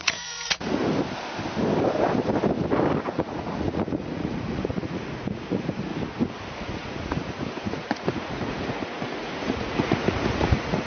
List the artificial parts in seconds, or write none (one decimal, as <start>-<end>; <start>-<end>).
0.0-0.8; 3.0-5.9; 6.6-10.9